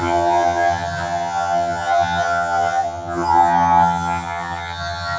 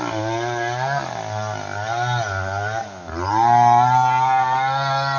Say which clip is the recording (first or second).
second